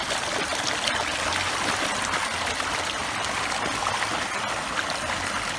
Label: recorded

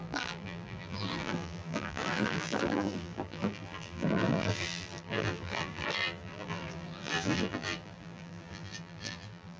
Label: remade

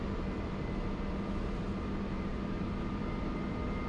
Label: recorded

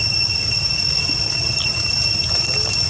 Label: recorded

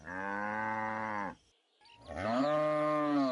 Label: recorded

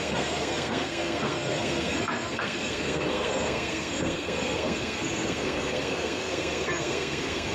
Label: remade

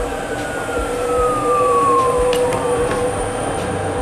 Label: remade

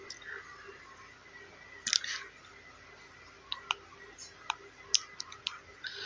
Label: recorded